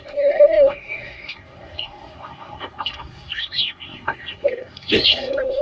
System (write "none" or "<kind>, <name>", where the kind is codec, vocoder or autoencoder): codec, SNAC